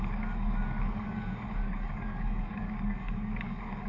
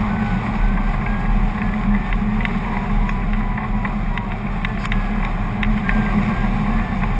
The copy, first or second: first